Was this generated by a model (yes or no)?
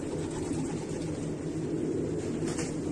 no